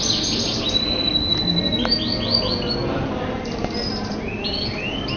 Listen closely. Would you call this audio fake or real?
real